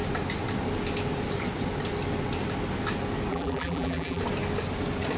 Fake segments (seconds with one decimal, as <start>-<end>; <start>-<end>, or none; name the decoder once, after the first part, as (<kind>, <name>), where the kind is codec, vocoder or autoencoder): 3.3-4.2 (vocoder, BigVGAN v2)